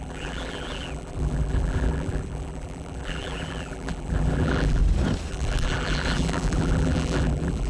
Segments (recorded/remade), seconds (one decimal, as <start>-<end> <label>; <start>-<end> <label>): 0.0-4.8 remade; 4.8-5.3 recorded; 5.3-7.7 remade